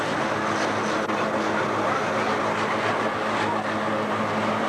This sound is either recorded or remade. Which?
recorded